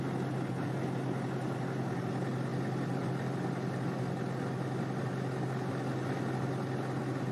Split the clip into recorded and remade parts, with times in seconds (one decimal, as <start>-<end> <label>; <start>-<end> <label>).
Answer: 0.0-7.3 recorded